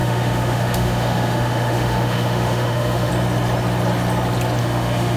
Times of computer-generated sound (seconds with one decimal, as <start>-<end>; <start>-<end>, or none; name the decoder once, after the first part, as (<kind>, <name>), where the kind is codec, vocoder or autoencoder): 0.0-3.1 (autoencoder, DAC-VAE); 4.6-5.2